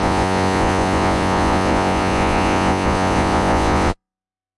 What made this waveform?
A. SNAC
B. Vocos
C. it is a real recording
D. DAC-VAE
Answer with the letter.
B